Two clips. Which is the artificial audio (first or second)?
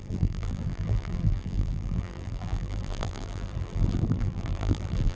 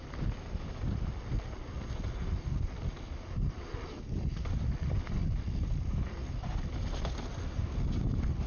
first